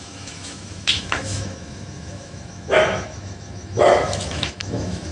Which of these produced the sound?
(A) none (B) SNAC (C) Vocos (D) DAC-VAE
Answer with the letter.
D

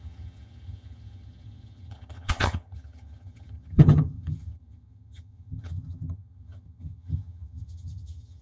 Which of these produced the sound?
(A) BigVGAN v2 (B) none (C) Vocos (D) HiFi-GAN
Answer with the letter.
D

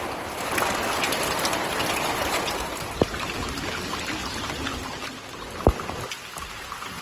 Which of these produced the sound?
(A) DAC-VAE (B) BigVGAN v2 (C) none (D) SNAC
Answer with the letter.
C